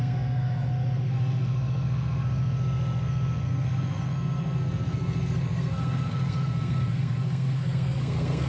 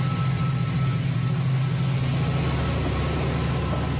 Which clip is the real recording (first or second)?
second